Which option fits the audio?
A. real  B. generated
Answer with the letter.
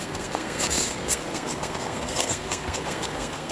B